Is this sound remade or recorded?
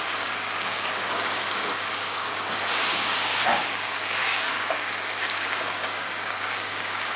remade